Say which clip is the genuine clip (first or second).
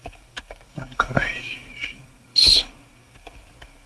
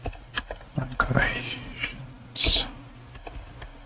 second